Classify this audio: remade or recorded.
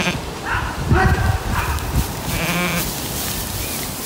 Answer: remade